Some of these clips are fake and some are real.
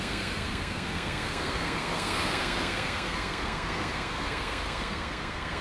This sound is fake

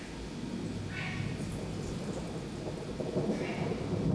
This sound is real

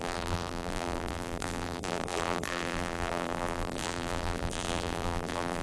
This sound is fake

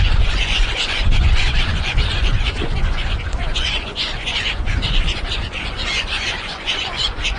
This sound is fake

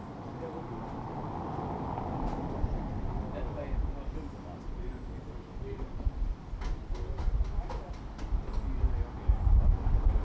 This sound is real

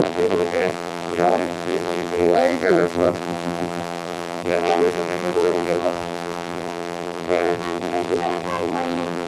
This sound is fake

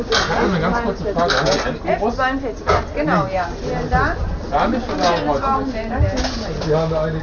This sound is real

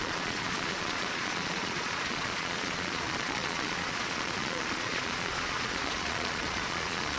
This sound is fake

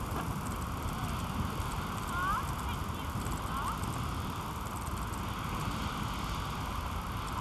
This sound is real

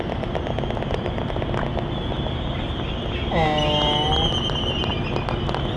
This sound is real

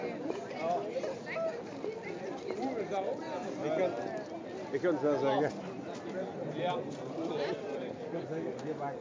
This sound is real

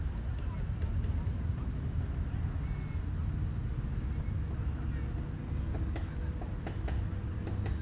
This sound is real